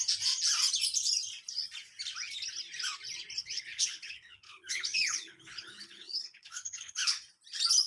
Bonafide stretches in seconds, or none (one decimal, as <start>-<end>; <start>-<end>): 0.0-3.4; 7.2-7.9